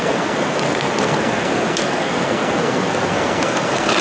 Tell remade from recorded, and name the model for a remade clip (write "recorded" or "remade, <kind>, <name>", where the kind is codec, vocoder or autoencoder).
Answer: remade, codec, SNAC